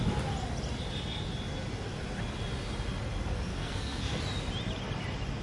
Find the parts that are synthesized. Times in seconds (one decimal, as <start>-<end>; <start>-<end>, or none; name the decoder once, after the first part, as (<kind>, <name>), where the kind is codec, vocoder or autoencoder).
3.5-4.2 (codec, SNAC)

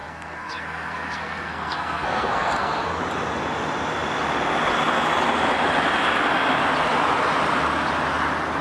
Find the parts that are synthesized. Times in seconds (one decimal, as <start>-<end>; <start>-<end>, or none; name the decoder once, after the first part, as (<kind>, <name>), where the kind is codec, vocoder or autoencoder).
0.0-3.0 (codec, SNAC)

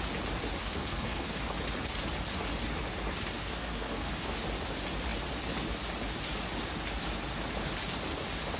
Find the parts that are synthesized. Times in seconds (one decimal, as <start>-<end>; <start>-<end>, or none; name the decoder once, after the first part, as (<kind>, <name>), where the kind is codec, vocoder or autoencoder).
0.6-1.4 (codec, SNAC); 3.4-4.1

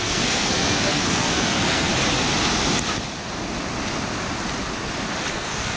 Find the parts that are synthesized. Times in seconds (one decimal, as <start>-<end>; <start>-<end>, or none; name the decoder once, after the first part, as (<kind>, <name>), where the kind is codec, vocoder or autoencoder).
0.0-1.9 (codec, SNAC); 5.3-5.8

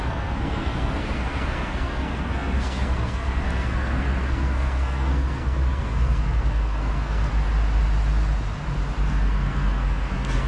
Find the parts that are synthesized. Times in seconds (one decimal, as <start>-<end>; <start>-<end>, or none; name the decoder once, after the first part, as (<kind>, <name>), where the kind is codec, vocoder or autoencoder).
0.0-7.3 (codec, SNAC); 9.1-10.5